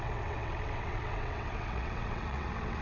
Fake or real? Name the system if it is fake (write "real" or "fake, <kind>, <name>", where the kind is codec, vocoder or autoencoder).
fake, vocoder, WaveNeXt